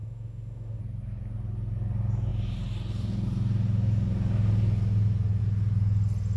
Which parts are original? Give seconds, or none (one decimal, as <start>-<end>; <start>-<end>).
0.8-6.4